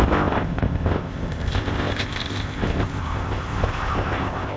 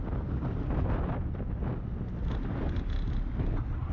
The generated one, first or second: first